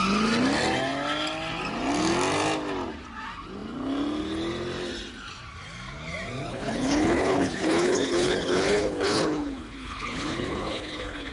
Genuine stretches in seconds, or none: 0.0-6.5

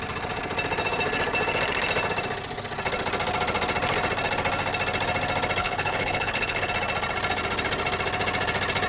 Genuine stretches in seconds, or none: 0.0-5.6; 6.7-8.9

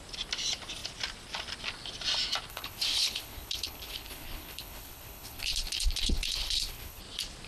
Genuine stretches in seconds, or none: 0.0-2.5; 7.0-7.5

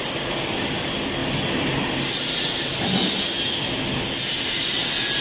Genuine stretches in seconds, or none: 0.0-5.2

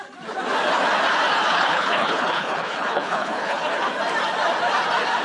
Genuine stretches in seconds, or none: 0.0-1.5; 3.6-5.2